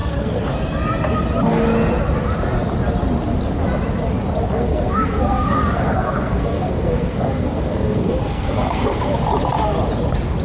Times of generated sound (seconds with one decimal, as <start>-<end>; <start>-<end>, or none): 0.0-0.5; 4.5-9.2